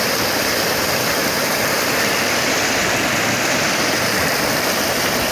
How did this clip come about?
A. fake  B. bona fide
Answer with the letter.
A